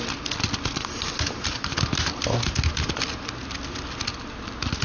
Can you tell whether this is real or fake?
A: real